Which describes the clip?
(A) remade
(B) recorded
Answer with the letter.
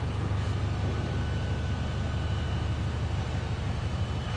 B